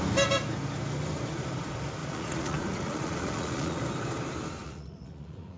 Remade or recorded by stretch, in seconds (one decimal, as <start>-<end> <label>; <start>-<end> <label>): 0.0-2.0 recorded; 2.0-3.8 remade; 3.8-4.6 recorded; 4.6-5.6 remade